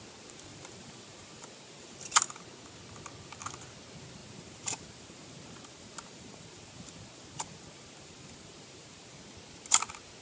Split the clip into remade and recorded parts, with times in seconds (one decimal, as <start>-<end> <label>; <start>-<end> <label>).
0.0-0.5 recorded; 0.5-2.2 remade; 2.2-4.2 recorded; 4.2-9.1 remade; 9.1-10.2 recorded